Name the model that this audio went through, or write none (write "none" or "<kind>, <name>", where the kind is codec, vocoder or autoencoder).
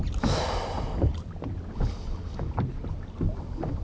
none